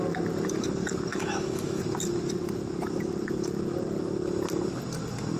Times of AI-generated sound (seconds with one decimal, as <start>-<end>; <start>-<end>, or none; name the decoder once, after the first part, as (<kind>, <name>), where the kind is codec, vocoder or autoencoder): 1.1-1.8 (autoencoder, DAC-VAE)